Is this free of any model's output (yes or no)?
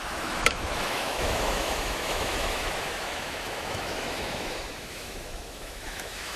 no